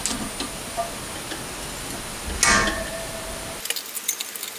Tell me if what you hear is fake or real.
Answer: real